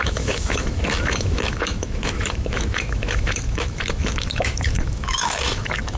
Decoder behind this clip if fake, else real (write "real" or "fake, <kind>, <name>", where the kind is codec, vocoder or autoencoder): fake, autoencoder, DAC-VAE